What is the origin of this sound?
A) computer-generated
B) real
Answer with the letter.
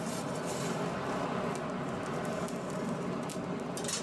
B